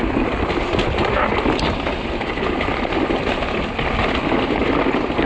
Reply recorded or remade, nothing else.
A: recorded